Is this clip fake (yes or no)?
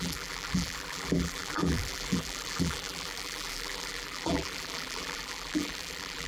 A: yes